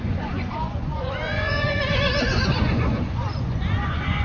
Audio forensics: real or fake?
fake